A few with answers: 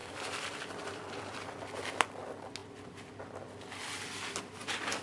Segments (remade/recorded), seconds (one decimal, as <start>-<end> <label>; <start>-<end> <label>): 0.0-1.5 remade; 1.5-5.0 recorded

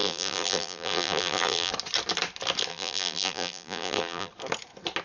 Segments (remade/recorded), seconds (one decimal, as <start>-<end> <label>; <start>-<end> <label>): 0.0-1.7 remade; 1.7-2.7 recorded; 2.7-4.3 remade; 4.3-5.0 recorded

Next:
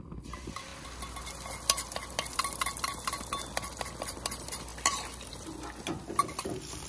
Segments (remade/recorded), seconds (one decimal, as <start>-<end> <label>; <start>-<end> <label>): 0.0-4.7 remade; 4.7-5.3 recorded; 5.3-6.9 remade

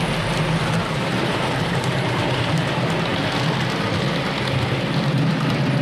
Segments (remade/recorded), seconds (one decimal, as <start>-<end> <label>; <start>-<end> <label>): 0.0-0.8 recorded; 0.8-2.6 remade; 2.6-5.8 recorded